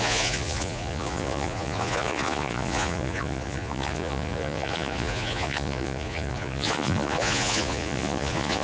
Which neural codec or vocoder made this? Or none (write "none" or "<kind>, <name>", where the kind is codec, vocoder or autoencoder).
vocoder, Vocos